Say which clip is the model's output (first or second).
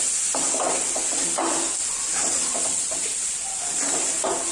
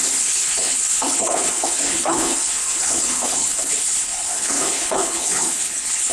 second